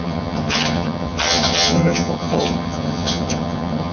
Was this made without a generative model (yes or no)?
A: no